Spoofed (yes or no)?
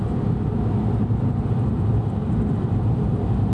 no